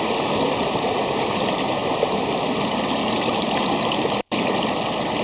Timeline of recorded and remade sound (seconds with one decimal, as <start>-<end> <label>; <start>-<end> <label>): 0.0-5.2 recorded